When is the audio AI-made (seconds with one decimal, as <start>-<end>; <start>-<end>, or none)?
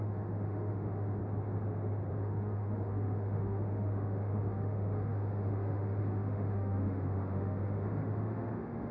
0.0-1.2; 2.1-8.9